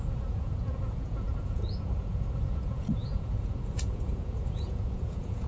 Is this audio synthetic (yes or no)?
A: yes